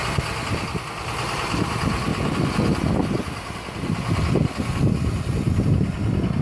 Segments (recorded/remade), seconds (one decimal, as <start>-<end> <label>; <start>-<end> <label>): 0.0-6.4 recorded